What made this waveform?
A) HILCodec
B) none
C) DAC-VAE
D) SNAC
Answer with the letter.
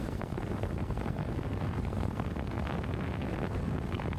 D